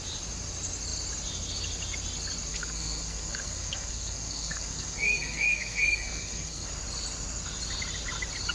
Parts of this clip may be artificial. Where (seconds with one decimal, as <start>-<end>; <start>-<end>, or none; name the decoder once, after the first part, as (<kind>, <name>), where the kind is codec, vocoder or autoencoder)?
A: 2.5-6.7 (codec, SNAC)